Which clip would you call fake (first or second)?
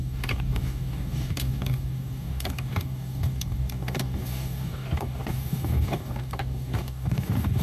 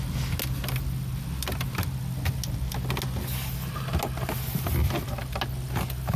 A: first